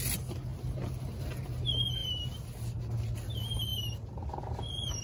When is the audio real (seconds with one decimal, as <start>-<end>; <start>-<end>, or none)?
0.0-5.0

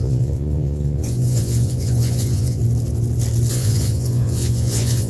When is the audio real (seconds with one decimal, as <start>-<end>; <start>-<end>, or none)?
2.6-3.5